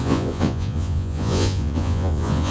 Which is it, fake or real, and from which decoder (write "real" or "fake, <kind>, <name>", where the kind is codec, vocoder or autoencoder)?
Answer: fake, vocoder, Vocos